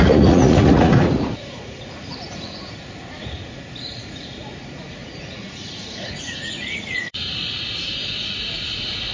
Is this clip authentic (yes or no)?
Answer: no